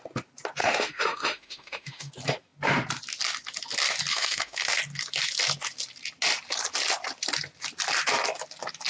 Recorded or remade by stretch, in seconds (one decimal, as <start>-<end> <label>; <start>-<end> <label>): 0.0-0.6 recorded; 0.6-2.1 remade; 2.1-4.1 recorded; 4.1-4.8 remade; 4.8-8.9 recorded